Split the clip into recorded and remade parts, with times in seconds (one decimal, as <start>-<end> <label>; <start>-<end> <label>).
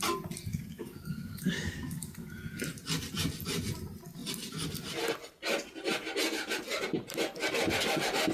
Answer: 0.0-0.5 recorded; 0.5-2.6 remade; 2.6-8.3 recorded